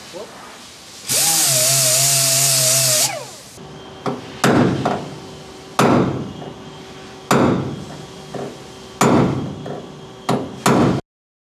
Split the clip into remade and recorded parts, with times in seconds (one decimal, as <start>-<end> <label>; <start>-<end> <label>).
0.0-11.5 recorded